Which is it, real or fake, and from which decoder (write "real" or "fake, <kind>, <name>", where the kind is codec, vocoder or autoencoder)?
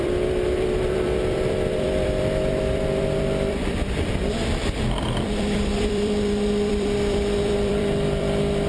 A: fake, vocoder, BigVGAN v2